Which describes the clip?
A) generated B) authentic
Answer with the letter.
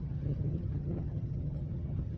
A